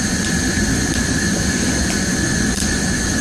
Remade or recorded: remade